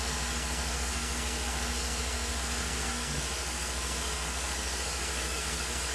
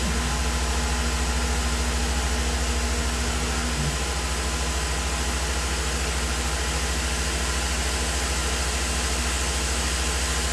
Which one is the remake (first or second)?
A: first